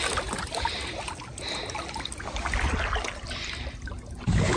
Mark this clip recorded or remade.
recorded